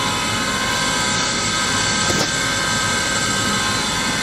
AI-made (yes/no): no